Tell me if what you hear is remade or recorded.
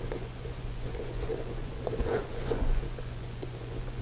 remade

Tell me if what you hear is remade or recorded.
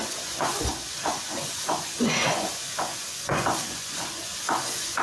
remade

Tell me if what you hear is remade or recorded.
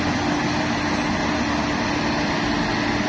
recorded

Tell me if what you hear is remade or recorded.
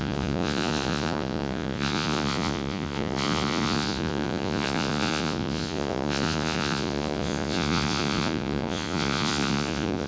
remade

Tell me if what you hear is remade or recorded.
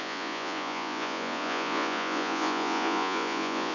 remade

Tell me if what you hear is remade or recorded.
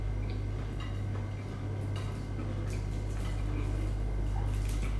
recorded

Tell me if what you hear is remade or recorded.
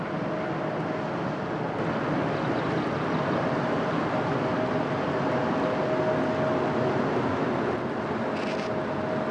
recorded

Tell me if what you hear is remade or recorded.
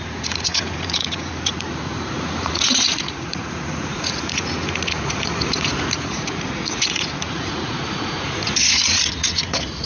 remade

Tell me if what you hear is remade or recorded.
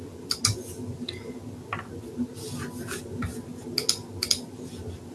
recorded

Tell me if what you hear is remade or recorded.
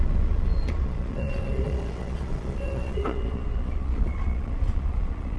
remade